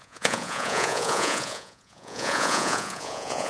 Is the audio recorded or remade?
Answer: remade